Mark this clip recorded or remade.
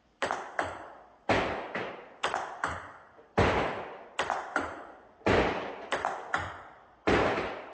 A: remade